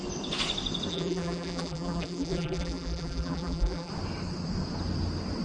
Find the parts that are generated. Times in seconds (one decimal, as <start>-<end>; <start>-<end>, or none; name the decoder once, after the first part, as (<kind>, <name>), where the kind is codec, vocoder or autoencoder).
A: 0.9-3.9 (vocoder, BigVGAN v2)

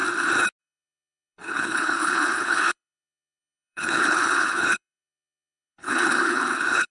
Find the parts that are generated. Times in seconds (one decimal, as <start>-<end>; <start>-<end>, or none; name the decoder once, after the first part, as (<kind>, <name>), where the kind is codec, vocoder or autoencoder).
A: 0.6-6.9 (codec, HILCodec)

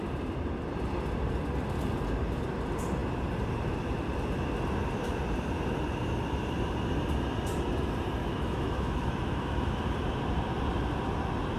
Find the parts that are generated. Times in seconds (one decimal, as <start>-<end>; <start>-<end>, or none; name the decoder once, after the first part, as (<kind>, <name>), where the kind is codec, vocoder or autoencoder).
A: 8.2-9.8 (autoencoder, DAC-VAE)

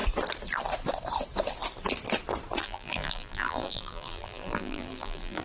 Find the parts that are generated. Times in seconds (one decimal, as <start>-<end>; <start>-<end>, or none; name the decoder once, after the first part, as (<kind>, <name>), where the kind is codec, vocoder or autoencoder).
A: 2.6-5.4 (vocoder, BigVGAN v2)

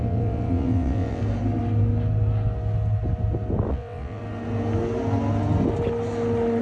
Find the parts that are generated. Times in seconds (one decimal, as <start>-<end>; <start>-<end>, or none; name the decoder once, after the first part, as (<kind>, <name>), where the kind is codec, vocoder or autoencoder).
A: 0.0-1.2 (vocoder, WaveNeXt); 3.7-4.2

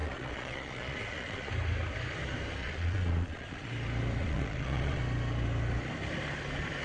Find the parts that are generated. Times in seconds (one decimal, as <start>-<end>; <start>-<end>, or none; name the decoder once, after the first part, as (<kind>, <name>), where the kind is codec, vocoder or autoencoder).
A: 0.0-1.5 (vocoder, Vocos); 2.6-3.7; 4.2-5.0